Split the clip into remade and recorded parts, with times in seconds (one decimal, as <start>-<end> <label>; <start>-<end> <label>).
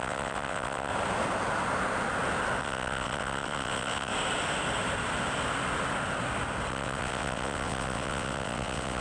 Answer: 0.0-0.9 remade; 0.9-2.6 recorded; 2.6-4.1 remade; 4.1-6.7 recorded; 6.7-9.0 remade